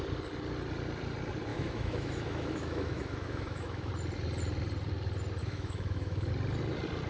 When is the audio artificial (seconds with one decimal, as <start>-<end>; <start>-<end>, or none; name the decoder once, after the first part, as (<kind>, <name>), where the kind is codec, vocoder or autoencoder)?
1.5-3.9 (autoencoder, DAC-VAE); 5.4-6.3